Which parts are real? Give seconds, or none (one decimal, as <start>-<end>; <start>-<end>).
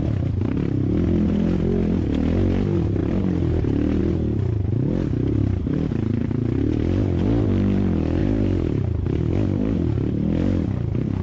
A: 0.0-3.0; 4.0-5.4; 6.2-8.2; 8.8-11.2